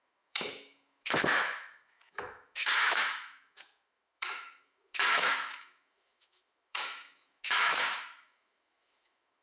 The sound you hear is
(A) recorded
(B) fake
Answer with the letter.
B